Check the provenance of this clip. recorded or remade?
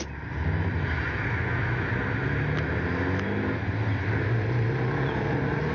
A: recorded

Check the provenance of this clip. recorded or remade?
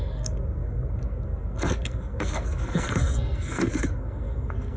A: remade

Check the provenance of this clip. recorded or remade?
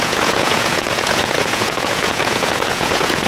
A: remade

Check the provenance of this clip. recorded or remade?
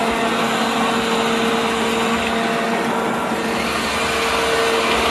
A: recorded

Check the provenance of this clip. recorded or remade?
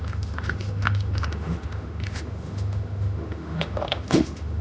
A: remade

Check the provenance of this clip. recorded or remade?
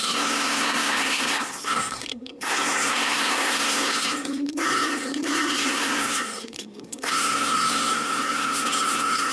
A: remade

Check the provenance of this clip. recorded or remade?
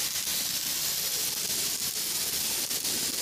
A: recorded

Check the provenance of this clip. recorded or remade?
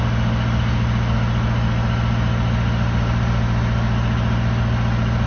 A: recorded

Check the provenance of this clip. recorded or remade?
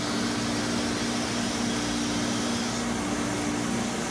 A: recorded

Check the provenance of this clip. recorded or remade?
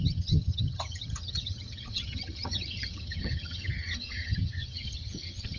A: remade